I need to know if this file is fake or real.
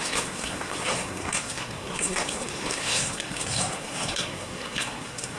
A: fake